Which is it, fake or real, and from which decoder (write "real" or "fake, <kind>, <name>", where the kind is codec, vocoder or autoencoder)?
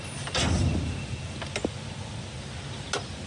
real